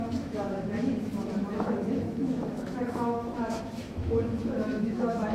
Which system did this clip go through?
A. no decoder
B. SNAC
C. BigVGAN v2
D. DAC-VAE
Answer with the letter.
D